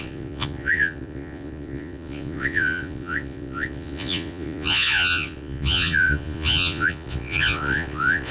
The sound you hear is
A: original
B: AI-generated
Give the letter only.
B